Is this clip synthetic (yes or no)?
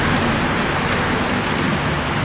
no